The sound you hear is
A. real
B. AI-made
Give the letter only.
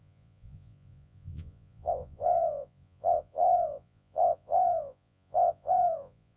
B